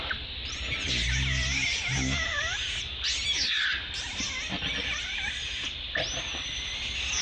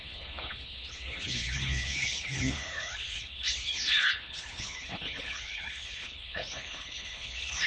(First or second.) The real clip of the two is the first